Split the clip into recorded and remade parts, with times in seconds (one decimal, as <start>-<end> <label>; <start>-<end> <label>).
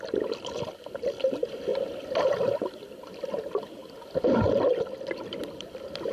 0.0-1.7 recorded; 1.7-2.6 remade; 2.6-3.8 recorded; 3.8-6.1 remade